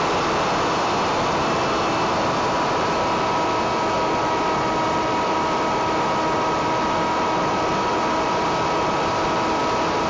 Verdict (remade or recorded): recorded